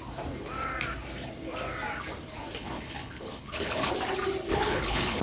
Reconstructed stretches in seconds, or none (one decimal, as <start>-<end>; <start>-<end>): 2.6-3.9; 4.5-5.2